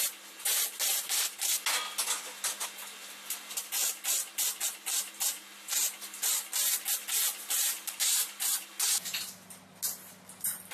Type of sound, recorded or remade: recorded